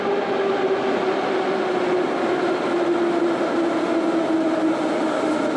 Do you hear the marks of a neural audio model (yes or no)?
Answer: no